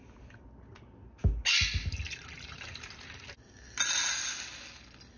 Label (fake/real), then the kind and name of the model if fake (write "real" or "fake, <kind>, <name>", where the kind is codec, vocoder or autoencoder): real